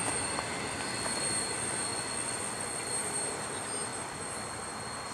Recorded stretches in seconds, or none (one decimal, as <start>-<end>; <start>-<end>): 0.0-1.9; 2.9-5.1